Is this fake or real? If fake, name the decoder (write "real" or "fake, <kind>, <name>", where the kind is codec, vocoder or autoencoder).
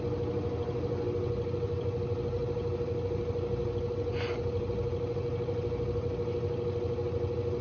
real